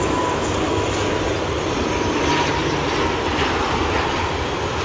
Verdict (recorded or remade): remade